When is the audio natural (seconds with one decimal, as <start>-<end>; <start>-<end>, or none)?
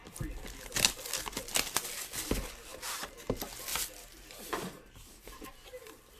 0.0-2.7; 3.2-3.7; 5.5-6.2